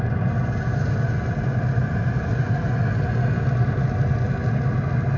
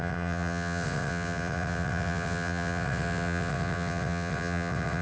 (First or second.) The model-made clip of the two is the second